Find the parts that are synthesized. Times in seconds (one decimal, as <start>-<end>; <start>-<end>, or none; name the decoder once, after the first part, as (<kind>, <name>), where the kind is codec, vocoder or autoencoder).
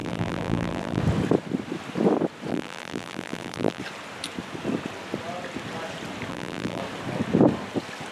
0.0-1.0 (vocoder, BigVGAN v2); 2.5-3.8; 6.3-6.8